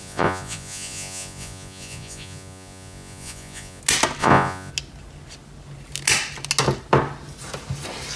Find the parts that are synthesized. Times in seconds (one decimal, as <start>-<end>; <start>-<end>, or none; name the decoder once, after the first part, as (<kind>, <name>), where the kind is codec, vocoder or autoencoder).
0.0-3.8 (vocoder, Vocos); 4.2-4.7